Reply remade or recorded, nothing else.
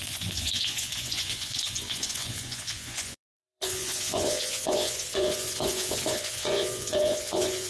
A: remade